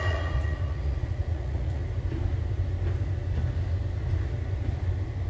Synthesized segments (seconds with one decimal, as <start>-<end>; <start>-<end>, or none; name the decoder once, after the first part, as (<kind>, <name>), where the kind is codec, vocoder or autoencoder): 0.0-1.8 (vocoder, Vocos)